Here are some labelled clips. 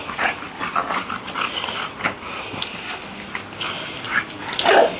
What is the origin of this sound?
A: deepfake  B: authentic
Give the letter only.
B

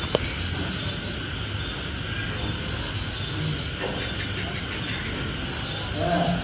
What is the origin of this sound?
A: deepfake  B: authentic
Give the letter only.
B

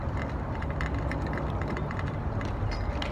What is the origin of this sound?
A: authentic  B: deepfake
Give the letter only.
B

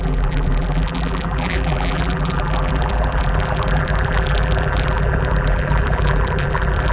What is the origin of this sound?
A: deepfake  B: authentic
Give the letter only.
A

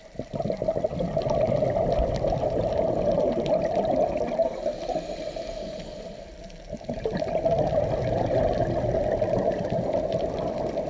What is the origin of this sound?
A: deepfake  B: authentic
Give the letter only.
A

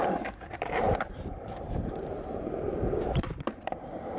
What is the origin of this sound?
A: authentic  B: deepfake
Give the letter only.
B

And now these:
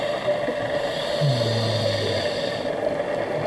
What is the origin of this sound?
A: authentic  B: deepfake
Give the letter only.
A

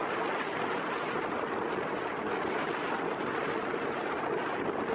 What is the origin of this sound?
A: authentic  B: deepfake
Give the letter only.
A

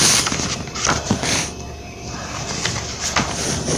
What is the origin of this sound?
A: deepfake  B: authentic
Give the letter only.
A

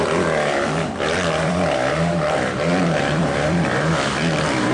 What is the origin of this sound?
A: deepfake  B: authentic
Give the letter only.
A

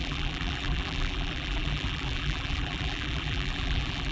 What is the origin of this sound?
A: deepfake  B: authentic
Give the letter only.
A